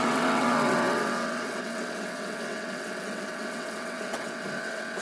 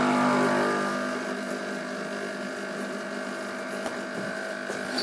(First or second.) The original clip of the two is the second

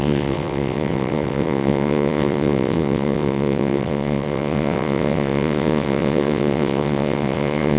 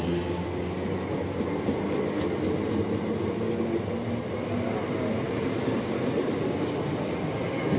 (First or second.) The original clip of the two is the second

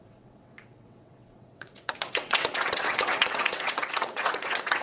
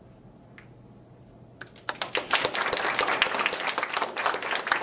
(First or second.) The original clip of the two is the second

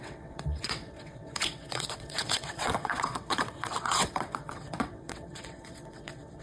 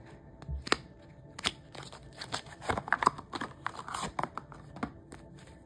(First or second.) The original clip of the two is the second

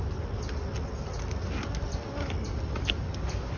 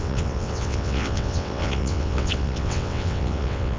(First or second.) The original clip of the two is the first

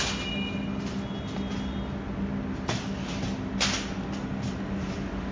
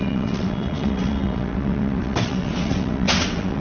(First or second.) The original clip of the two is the first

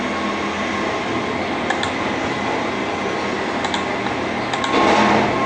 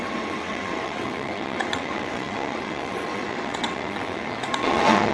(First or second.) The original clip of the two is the first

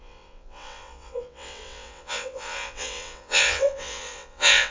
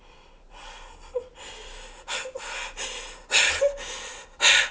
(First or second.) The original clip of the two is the second